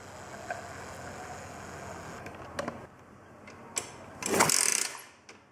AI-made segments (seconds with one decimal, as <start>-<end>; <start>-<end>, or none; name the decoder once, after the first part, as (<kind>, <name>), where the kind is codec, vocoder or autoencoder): none